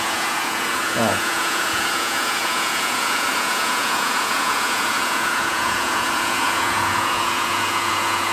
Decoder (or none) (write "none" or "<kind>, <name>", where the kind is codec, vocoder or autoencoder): vocoder, Vocos